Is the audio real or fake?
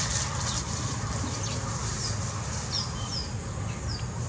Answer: real